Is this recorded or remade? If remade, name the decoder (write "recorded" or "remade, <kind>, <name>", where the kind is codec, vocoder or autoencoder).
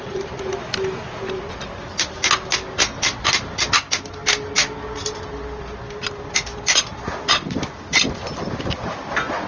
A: recorded